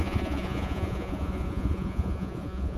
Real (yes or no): no